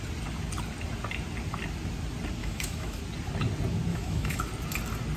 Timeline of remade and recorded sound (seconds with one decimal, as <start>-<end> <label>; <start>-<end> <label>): 0.0-2.4 recorded; 2.4-3.0 remade; 3.0-3.9 recorded; 3.9-4.4 remade; 4.4-5.2 recorded